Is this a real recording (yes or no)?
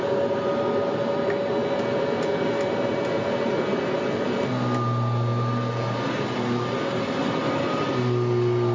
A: yes